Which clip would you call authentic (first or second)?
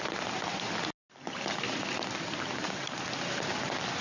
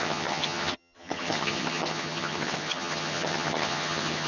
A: first